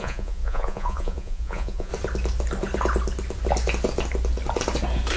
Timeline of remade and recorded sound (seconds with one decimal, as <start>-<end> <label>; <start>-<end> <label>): 0.0-1.9 remade; 1.9-5.2 recorded